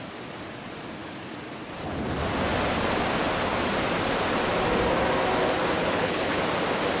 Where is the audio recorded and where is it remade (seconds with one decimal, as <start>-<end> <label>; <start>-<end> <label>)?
0.0-5.8 recorded; 5.8-6.4 remade; 6.4-7.0 recorded